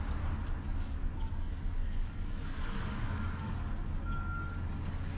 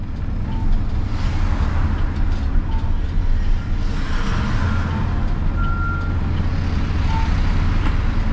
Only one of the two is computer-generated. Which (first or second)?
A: first